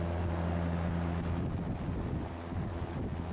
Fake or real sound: real